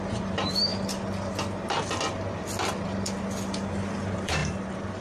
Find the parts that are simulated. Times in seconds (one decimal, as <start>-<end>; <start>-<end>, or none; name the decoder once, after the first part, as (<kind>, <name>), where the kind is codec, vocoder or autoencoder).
0.0-0.7 (vocoder, BigVGAN v2); 3.7-5.0